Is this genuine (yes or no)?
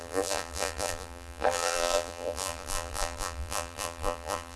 no